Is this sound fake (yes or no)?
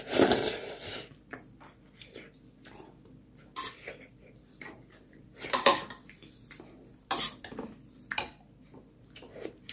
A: yes